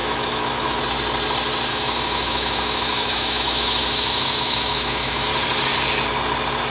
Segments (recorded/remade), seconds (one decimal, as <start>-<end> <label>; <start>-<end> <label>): 0.0-0.8 remade; 0.8-1.7 recorded; 1.7-5.3 remade; 5.3-6.7 recorded